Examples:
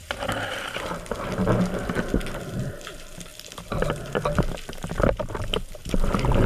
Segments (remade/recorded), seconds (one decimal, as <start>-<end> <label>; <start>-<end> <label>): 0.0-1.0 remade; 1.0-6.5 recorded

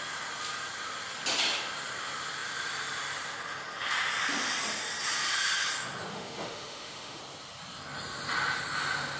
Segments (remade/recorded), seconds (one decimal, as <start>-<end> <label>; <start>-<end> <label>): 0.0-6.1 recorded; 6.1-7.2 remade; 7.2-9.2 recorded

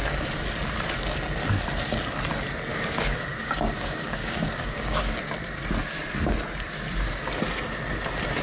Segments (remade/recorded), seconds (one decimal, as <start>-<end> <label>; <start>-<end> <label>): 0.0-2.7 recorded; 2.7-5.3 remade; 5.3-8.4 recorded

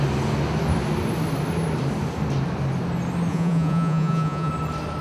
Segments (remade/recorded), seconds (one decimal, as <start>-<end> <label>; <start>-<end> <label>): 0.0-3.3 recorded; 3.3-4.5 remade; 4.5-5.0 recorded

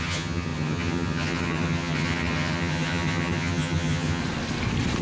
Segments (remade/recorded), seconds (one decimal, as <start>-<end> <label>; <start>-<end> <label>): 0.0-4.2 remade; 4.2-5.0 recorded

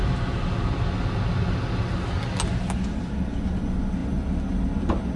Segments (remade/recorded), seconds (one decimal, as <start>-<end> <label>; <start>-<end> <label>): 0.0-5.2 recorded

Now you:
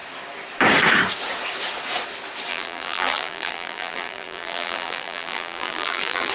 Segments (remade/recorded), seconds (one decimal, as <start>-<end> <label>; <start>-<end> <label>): 0.0-2.5 recorded; 2.5-6.3 remade

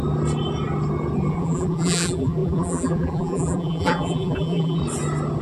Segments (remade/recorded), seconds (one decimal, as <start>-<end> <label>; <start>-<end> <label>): 0.0-1.3 recorded; 1.3-4.8 remade; 4.8-5.4 recorded